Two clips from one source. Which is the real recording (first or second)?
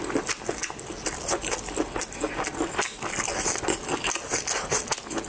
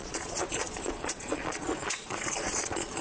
first